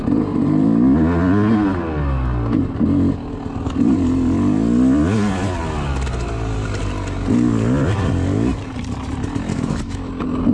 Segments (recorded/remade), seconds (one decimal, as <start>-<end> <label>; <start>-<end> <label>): 0.0-9.5 recorded; 9.5-10.1 remade; 10.1-10.5 recorded

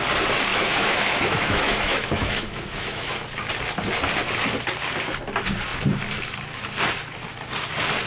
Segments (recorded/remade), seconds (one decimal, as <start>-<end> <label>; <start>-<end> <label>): 0.0-0.5 recorded; 0.5-3.1 remade; 3.1-8.1 recorded

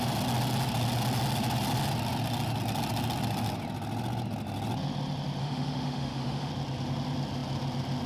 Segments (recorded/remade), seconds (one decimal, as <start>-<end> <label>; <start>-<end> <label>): 0.0-5.4 recorded; 5.4-6.5 remade; 6.5-8.1 recorded